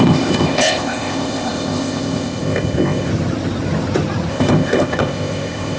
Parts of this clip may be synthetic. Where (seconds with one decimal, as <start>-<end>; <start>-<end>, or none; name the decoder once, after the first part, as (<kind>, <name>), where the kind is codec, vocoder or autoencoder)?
0.0-3.1 (codec, ZipCodec); 4.3-5.8